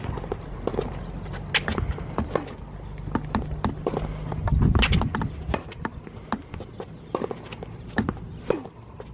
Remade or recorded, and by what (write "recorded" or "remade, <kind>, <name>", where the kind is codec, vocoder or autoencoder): recorded